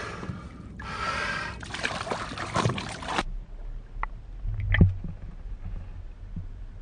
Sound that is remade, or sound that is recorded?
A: recorded